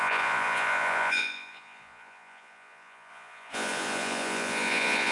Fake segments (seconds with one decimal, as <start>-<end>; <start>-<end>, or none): 0.0-5.1